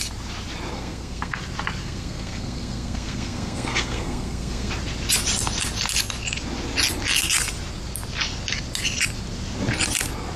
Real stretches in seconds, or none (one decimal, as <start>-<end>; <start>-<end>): 0.0-0.7; 1.4-1.8; 4.7-10.4